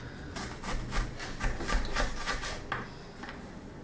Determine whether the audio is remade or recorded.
recorded